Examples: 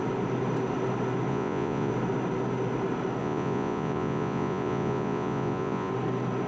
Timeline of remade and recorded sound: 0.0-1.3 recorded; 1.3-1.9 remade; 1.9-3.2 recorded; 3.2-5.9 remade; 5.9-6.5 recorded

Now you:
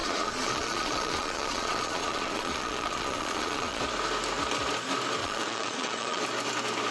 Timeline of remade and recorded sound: 0.0-3.8 remade; 3.8-5.2 recorded; 5.2-6.2 remade; 6.2-6.9 recorded